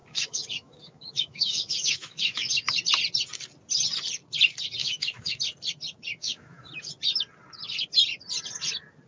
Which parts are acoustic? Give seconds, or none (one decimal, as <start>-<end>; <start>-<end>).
2.5-4.8; 5.4-6.2; 6.7-9.1